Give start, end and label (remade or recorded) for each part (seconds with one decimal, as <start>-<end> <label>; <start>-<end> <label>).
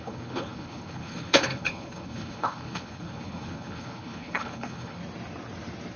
0.0-5.0 remade; 5.0-6.0 recorded